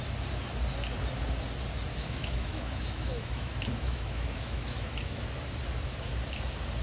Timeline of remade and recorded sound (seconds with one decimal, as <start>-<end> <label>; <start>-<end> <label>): 0.0-1.9 recorded; 1.9-5.2 remade; 5.2-6.8 recorded